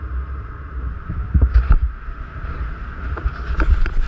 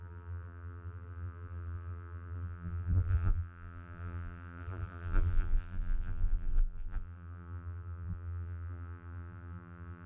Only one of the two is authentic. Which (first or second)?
first